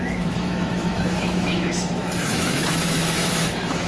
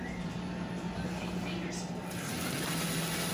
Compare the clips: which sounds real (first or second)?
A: second